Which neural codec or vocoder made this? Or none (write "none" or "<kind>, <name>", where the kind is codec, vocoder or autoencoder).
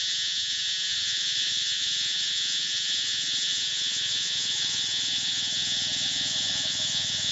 vocoder, Vocos